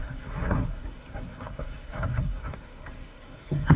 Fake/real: fake